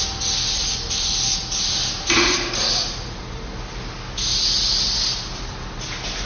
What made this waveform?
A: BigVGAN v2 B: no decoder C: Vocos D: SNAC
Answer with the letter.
B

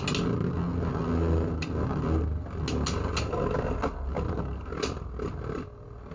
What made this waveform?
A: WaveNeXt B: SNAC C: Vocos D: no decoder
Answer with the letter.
D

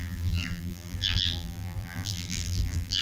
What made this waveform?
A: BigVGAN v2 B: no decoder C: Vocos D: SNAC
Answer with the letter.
A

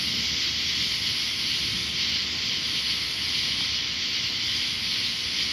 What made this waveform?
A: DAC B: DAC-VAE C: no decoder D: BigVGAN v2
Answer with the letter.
C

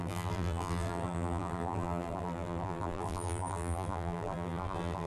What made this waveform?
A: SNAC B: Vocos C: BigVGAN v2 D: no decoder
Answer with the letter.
C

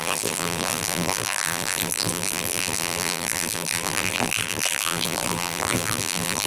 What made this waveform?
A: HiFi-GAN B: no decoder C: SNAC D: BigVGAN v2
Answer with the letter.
D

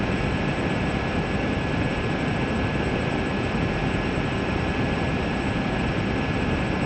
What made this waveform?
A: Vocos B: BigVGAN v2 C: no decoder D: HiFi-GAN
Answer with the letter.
B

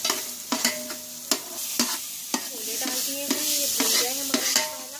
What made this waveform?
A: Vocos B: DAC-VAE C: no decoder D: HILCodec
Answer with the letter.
C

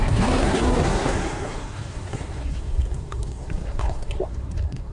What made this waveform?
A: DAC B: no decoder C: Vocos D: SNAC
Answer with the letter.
D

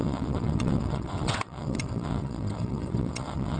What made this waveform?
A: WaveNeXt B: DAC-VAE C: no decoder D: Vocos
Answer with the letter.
A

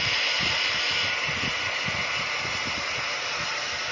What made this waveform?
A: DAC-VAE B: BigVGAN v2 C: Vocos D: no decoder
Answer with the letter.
D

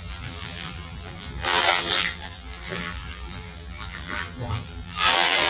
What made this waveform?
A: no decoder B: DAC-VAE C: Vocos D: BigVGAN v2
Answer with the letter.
D